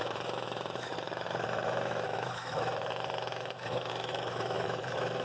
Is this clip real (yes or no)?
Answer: no